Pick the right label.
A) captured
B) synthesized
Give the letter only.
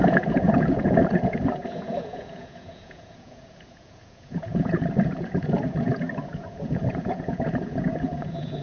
B